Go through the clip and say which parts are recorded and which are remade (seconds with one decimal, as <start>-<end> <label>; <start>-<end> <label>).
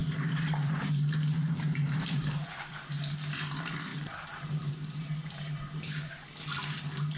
0.0-3.0 remade; 3.0-3.9 recorded; 3.9-6.1 remade; 6.1-7.2 recorded